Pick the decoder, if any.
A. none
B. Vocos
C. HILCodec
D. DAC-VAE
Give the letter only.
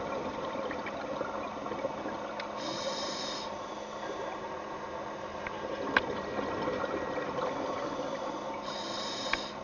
A